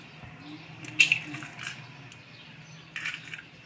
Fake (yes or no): no